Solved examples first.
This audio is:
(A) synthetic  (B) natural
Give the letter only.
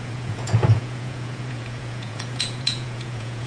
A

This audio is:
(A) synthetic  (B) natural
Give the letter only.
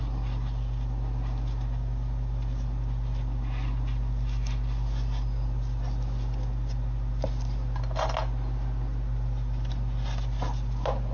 B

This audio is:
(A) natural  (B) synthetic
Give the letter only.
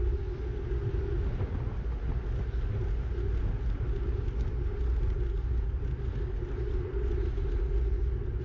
A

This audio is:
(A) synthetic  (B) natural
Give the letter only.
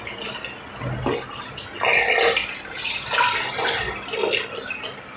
B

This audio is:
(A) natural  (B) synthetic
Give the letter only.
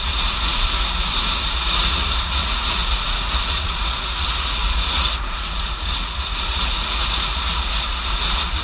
B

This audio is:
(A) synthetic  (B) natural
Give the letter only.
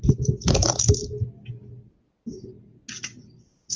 B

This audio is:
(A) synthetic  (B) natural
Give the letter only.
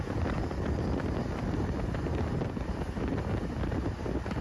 B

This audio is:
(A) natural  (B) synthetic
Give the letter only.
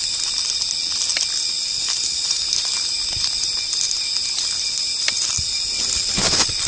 A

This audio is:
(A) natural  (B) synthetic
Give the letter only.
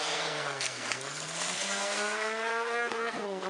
B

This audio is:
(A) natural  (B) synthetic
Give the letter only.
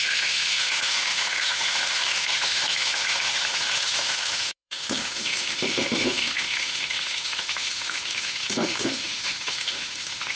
B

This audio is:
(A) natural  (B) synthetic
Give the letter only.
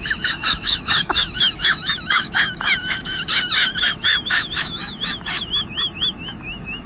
B